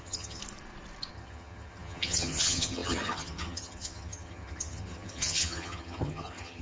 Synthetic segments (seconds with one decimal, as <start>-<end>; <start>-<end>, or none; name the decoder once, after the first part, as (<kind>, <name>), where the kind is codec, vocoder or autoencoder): 0.0-0.4 (vocoder, HiFi-GAN); 1.1-6.6